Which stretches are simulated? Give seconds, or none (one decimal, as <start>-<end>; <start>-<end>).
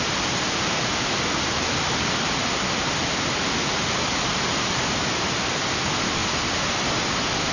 none